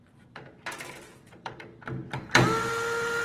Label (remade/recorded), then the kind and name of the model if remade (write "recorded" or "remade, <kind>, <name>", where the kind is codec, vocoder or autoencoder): remade, vocoder, BigVGAN v2